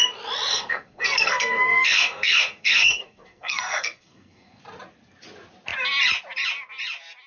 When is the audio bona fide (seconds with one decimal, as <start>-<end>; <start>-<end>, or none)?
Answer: 0.0-0.5; 4.6-7.3